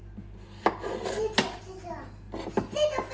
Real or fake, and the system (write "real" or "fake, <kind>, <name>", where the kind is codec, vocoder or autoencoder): real